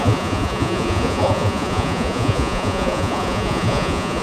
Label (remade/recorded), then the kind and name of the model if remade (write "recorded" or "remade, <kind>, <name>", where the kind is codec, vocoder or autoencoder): remade, vocoder, Vocos